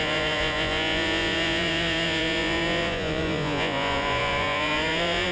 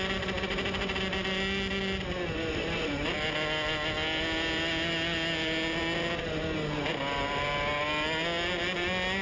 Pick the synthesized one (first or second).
first